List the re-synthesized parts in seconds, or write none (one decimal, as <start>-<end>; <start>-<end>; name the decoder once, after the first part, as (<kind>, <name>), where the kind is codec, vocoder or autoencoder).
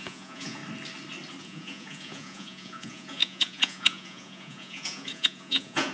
0.0-0.6 (vocoder, Vocos); 1.4-5.9